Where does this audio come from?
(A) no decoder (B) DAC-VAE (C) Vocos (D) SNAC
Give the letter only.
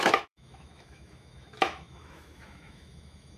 B